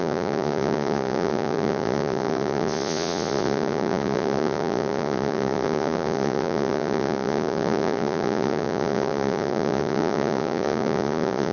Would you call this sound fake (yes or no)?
yes